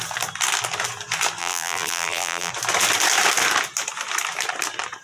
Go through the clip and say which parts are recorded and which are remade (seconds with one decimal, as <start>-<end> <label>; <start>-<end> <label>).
0.0-1.4 recorded; 1.4-2.5 remade; 2.5-5.0 recorded